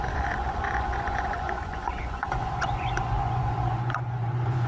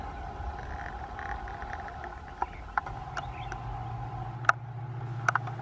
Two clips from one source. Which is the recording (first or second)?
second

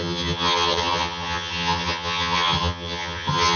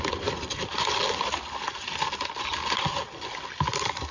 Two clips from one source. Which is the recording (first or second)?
second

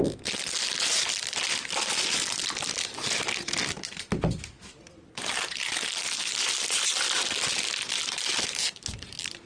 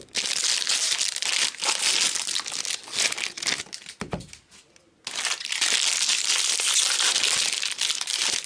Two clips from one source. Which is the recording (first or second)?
second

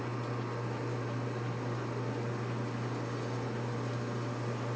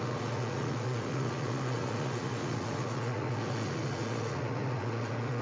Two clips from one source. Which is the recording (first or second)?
first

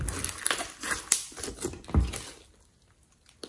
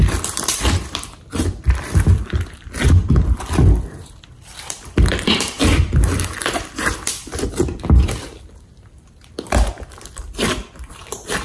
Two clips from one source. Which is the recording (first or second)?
first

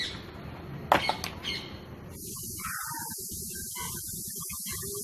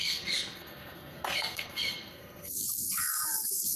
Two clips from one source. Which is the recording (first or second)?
first